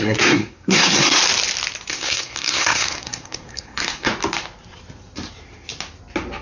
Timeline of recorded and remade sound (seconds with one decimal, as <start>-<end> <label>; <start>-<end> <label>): 0.0-1.2 remade; 1.2-1.9 recorded; 1.9-4.1 remade; 4.1-6.4 recorded